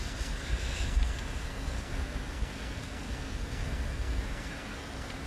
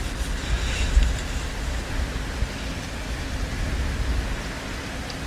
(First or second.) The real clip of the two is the second